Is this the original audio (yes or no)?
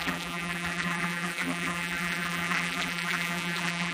no